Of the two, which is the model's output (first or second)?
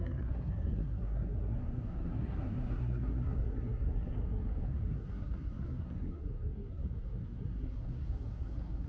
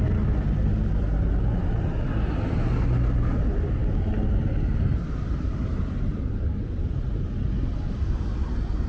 first